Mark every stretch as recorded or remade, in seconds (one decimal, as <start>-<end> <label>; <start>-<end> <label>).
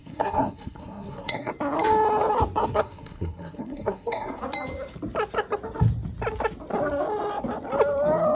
0.0-1.5 remade; 1.5-2.6 recorded; 2.6-4.4 remade; 4.4-8.3 recorded